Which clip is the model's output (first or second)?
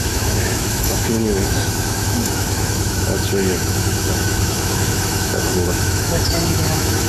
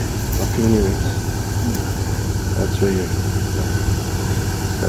first